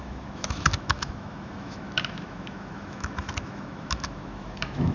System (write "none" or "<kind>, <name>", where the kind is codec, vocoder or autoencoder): autoencoder, DAC-VAE